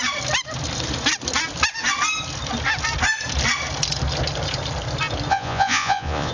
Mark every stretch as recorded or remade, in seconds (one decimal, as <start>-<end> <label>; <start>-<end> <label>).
0.0-5.3 recorded; 5.3-6.3 remade